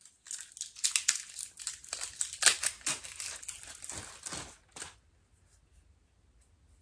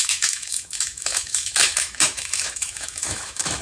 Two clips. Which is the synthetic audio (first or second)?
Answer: second